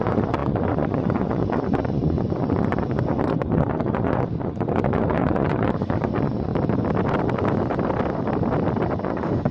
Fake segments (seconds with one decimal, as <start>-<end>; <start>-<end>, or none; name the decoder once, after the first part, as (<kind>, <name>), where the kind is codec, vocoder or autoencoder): 0.0-6.5 (vocoder, Vocos); 9.0-9.5